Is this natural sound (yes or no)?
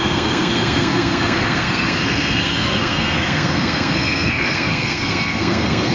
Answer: no